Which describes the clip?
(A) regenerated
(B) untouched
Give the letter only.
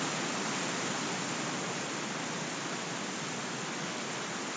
B